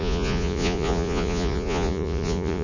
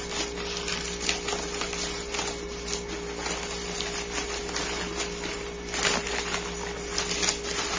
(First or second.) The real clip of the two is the second